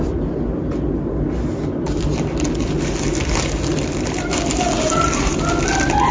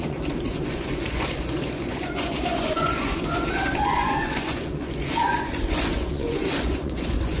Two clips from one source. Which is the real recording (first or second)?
first